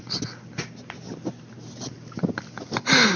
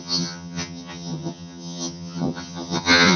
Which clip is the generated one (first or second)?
second